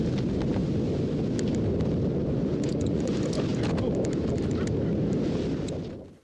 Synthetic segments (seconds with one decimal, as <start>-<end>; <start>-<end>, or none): 2.5-3.1